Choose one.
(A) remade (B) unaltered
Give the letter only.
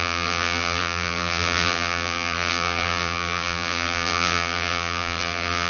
A